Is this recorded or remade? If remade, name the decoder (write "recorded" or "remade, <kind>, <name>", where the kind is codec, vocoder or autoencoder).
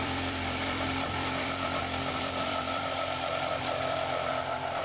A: remade, vocoder, BigVGAN v2